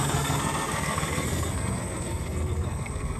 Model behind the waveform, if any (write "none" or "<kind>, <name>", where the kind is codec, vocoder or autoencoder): codec, SNAC